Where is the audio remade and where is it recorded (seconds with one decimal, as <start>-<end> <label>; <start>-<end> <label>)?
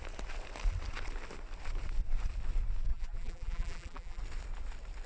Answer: 0.0-2.9 recorded; 2.9-4.2 remade; 4.2-5.1 recorded